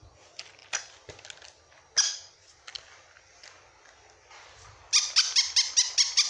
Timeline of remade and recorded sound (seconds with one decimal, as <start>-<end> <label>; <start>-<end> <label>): 0.0-6.3 recorded